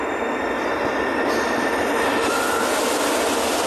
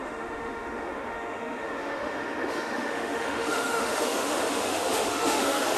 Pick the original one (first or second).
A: first